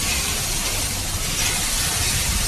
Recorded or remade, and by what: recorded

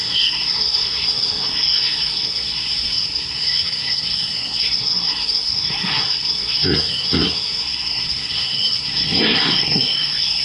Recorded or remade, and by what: remade, codec, SNAC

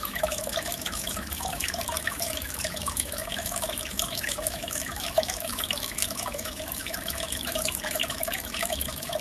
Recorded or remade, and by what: remade, autoencoder, DAC-VAE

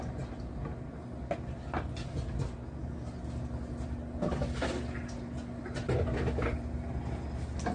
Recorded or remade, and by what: recorded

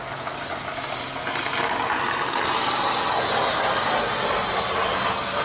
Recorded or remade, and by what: recorded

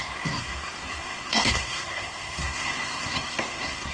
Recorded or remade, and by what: remade, codec, SNAC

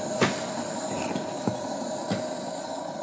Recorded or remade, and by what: recorded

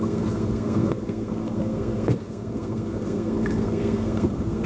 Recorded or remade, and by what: remade, codec, SNAC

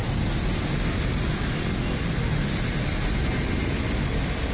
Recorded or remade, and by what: recorded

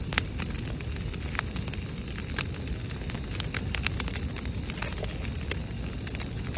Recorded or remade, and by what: recorded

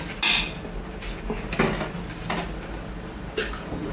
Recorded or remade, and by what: recorded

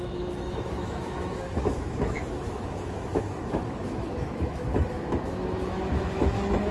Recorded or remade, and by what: remade, autoencoder, DAC-VAE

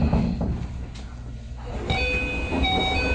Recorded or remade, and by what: recorded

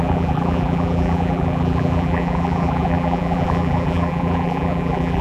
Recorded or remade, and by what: remade, vocoder, BigVGAN v2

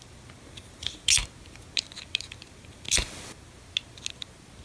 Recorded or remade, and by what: recorded